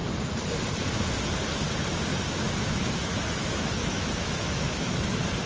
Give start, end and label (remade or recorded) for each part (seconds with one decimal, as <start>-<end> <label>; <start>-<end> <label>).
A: 0.0-2.1 recorded; 2.1-5.1 remade; 5.1-5.5 recorded